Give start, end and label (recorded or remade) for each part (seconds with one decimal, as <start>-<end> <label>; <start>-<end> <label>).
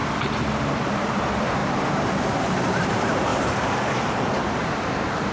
0.0-0.6 recorded; 0.6-1.6 remade; 1.6-2.4 recorded; 2.4-5.3 remade